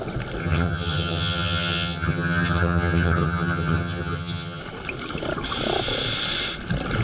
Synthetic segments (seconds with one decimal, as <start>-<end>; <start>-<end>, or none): 0.4-4.6